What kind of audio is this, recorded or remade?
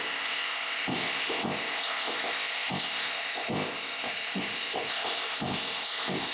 remade